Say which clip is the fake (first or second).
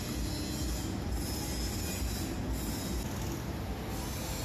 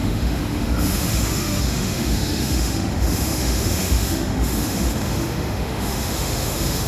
second